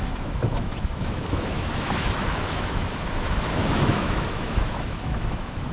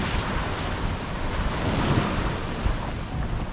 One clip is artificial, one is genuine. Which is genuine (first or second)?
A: second